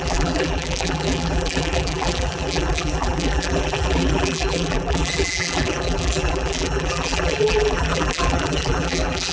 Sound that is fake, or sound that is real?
fake